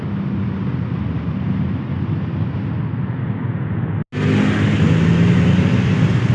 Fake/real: real